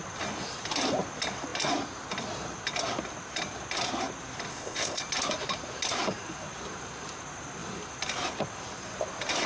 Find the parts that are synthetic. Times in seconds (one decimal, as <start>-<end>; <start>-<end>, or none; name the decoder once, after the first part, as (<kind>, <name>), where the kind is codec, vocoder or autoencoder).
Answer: 4.5-5.0 (codec, ZipCodec)